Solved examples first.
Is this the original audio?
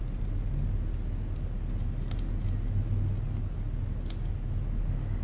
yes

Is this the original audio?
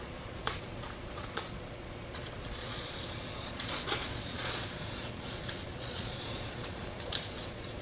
no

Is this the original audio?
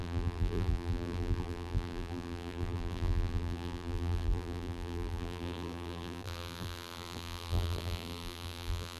no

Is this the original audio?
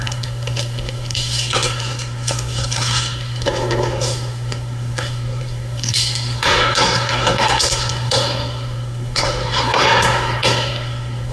no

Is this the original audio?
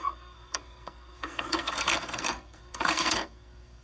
no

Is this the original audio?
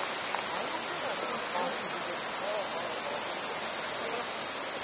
yes